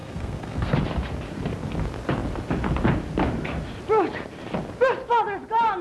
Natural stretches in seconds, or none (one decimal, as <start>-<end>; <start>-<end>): 0.7-5.8